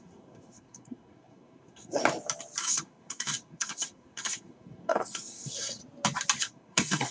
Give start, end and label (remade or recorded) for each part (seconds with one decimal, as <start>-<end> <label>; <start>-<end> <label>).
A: 0.0-2.0 remade; 2.0-2.6 recorded; 2.6-5.8 remade; 5.8-6.4 recorded; 6.4-7.1 remade